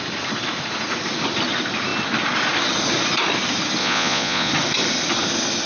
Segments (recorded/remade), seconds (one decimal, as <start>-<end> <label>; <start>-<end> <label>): 0.0-3.8 recorded; 3.8-4.5 remade; 4.5-5.7 recorded